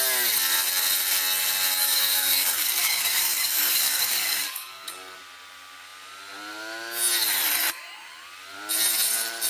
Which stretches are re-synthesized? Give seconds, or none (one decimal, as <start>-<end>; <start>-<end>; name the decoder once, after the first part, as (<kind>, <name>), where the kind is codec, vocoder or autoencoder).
1.8-5.2 (codec, DAC)